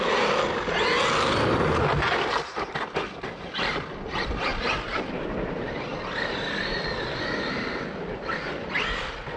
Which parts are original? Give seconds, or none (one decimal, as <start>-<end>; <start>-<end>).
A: 0.0-4.5; 7.5-9.4